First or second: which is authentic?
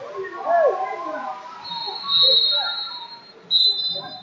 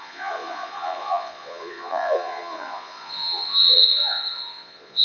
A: first